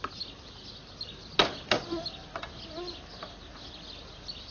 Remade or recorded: recorded